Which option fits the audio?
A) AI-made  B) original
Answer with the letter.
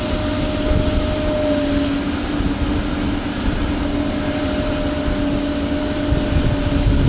B